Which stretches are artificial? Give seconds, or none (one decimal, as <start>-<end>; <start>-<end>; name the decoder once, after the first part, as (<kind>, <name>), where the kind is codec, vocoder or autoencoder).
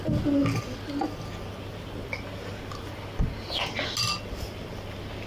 none